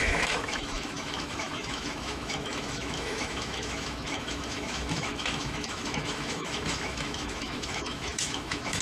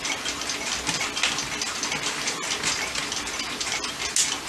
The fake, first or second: first